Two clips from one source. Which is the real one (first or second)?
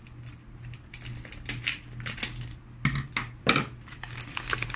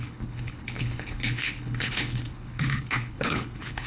first